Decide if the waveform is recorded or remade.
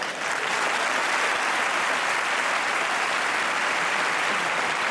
recorded